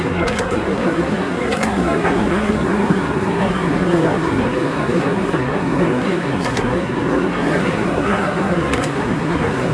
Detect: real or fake fake